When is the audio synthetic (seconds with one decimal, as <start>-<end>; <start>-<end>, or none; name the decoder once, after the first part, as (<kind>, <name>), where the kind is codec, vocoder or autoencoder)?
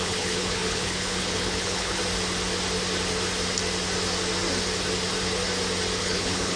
0.0-2.0 (codec, HILCodec); 6.0-6.6